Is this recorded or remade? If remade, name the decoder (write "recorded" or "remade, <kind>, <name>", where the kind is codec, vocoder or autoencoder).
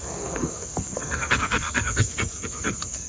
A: remade, codec, SNAC